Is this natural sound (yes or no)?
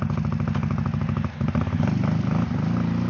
yes